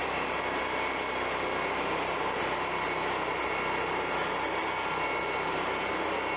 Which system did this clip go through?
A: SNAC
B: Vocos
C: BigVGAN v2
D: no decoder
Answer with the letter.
D